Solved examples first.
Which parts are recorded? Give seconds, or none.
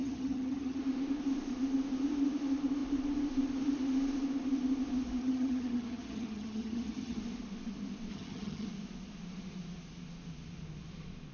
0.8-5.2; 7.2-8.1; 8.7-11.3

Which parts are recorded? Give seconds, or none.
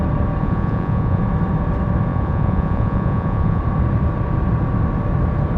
0.0-0.4; 1.2-2.1; 3.6-5.6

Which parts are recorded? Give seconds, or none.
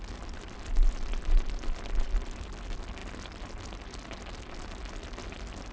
0.0-5.7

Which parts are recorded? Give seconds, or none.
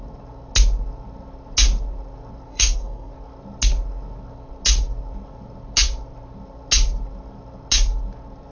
0.0-2.5; 3.1-8.5